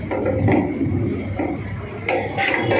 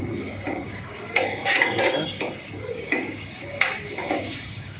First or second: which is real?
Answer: first